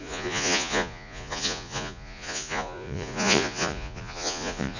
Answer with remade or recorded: remade